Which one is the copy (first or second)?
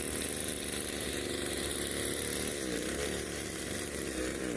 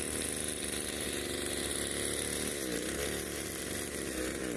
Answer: first